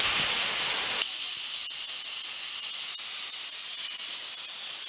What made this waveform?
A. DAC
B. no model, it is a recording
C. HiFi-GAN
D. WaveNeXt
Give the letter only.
B